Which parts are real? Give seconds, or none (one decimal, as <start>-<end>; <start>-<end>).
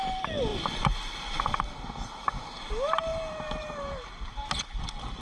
0.0-3.1; 4.3-5.2